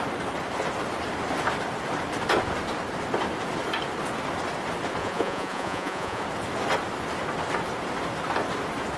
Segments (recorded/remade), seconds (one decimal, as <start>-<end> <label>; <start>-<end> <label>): 0.0-5.0 recorded; 5.0-6.2 remade; 6.2-9.0 recorded